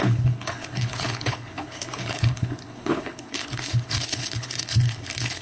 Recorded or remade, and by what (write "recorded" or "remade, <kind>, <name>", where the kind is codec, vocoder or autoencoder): remade, codec, HILCodec